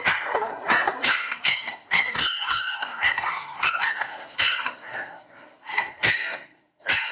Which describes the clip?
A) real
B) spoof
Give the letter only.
B